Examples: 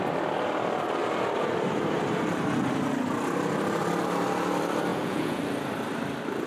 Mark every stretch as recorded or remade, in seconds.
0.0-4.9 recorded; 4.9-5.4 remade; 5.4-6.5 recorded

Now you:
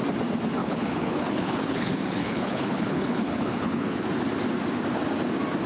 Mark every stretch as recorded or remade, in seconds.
0.0-0.6 recorded; 0.6-4.0 remade; 4.0-5.7 recorded

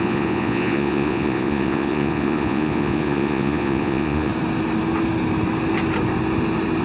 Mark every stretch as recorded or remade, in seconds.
0.0-4.3 remade; 4.3-6.8 recorded

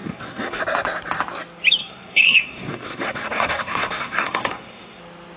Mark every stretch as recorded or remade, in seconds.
0.0-0.6 remade; 0.6-1.8 recorded; 1.8-5.0 remade; 5.0-5.4 recorded

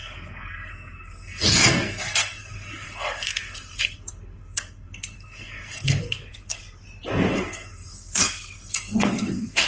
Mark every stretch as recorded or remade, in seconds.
0.0-6.6 remade; 6.6-7.3 recorded; 7.3-9.7 remade